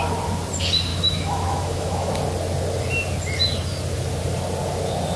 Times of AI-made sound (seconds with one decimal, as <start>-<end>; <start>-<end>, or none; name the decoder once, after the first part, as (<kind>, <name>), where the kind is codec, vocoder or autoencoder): 0.9-2.1 (autoencoder, DAC-VAE)